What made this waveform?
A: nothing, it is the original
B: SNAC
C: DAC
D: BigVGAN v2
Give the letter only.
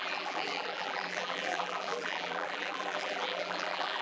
D